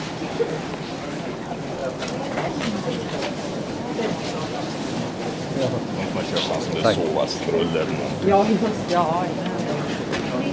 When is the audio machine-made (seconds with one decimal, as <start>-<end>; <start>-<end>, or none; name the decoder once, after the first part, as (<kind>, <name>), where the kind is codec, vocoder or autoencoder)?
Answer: none